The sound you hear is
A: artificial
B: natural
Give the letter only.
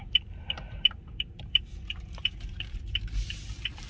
A